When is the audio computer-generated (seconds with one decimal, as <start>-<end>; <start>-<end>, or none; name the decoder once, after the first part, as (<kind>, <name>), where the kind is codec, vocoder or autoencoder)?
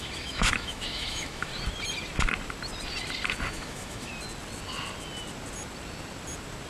0.0-1.5 (autoencoder, DAC-VAE); 3.5-4.1